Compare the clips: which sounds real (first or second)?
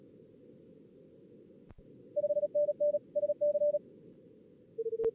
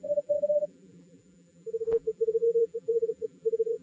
first